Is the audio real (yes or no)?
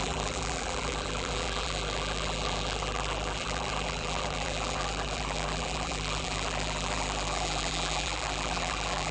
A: no